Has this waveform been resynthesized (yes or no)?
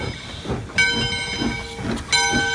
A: no